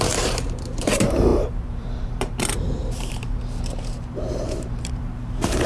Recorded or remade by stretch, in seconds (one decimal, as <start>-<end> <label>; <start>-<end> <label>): 0.0-5.7 remade